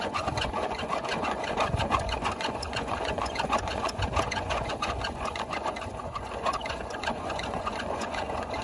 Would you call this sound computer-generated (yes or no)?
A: yes